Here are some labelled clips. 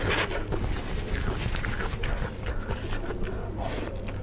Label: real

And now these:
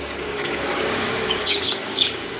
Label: fake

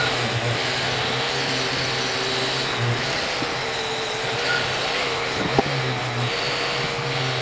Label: real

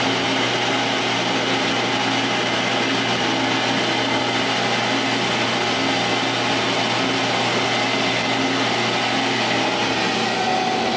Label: real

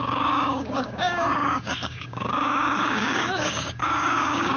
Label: fake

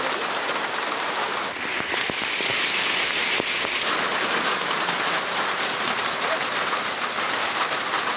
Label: real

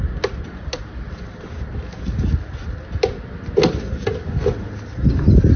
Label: real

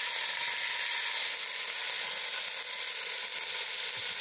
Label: real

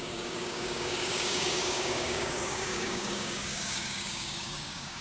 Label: fake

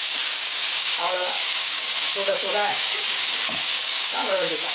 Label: fake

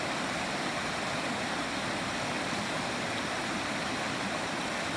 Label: real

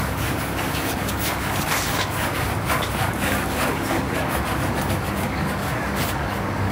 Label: fake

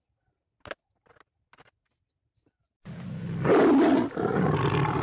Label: real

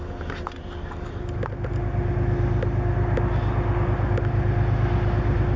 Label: real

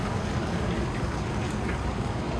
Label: fake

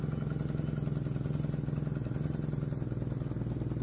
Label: real